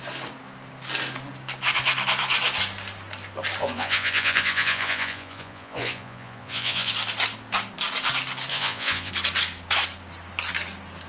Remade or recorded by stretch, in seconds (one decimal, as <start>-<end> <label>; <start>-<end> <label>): 0.0-3.6 recorded; 3.6-6.9 remade; 6.9-8.5 recorded; 8.5-9.1 remade; 9.1-11.1 recorded